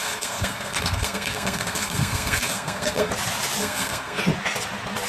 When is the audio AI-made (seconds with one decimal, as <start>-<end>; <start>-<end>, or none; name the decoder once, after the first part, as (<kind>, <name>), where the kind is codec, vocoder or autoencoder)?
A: 0.0-3.1 (codec, SNAC); 3.6-4.2

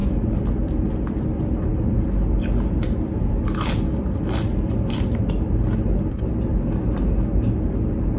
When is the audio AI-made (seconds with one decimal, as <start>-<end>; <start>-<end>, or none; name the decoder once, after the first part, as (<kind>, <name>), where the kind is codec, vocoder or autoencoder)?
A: none

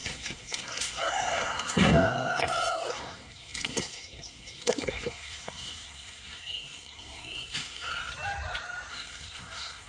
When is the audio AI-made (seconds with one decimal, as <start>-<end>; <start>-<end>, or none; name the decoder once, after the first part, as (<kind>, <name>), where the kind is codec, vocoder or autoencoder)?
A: 0.0-8.1 (codec, SNAC); 8.9-9.9